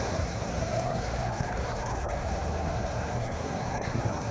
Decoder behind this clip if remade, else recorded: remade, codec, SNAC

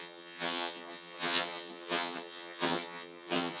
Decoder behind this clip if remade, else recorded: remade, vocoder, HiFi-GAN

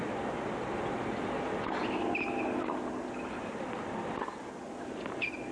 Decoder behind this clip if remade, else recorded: recorded